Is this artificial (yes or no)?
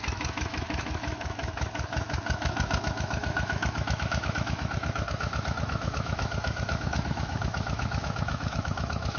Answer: yes